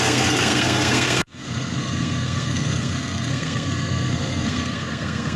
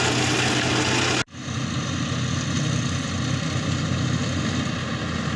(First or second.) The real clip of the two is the second